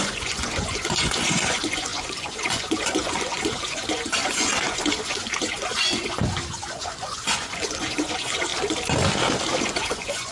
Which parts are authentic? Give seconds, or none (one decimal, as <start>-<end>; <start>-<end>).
8.5-9.6